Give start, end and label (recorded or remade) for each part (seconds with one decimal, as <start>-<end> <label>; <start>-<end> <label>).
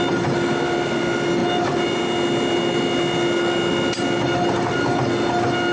0.0-5.7 recorded